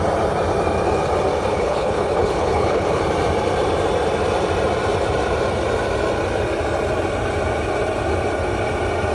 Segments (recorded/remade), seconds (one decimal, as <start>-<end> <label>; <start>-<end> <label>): 0.0-1.5 recorded; 1.5-3.0 remade; 3.0-9.1 recorded

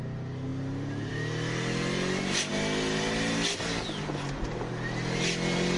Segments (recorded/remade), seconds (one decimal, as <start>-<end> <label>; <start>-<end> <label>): 0.0-5.8 recorded

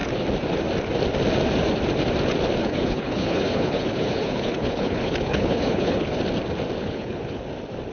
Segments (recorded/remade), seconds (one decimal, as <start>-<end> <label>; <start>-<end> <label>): 0.0-2.6 recorded; 2.6-6.2 remade; 6.2-6.8 recorded; 6.8-7.4 remade; 7.4-7.9 recorded

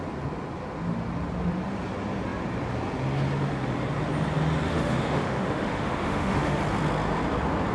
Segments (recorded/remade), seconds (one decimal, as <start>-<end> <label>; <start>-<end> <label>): 0.0-4.7 recorded; 4.7-6.6 remade; 6.6-7.7 recorded